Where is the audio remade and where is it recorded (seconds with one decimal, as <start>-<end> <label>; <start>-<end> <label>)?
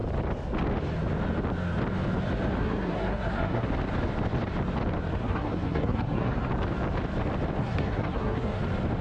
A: 0.0-2.6 recorded; 2.6-3.7 remade; 3.7-5.2 recorded; 5.2-6.5 remade; 6.5-7.6 recorded; 7.6-8.6 remade; 8.6-9.0 recorded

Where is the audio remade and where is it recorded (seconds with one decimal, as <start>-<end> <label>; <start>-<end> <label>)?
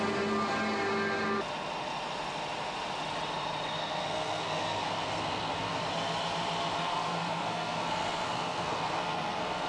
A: 0.0-3.8 recorded; 3.8-5.8 remade; 5.8-6.8 recorded; 6.8-9.7 remade